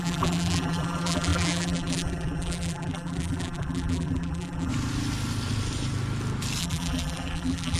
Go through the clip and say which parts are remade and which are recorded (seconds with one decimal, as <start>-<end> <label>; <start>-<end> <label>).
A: 0.0-4.7 remade; 4.7-6.6 recorded; 6.6-7.8 remade